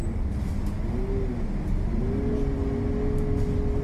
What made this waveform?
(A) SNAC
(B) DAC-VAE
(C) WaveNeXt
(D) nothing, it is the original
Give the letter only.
D